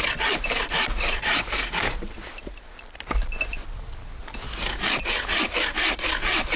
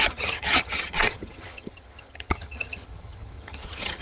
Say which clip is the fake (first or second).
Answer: second